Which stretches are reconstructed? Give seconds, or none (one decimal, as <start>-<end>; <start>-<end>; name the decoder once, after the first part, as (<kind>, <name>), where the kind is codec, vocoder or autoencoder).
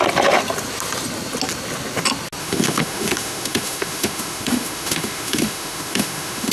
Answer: 2.4-6.5 (autoencoder, DAC-VAE)